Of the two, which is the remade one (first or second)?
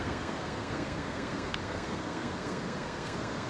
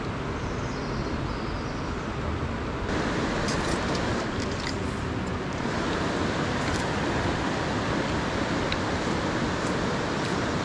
first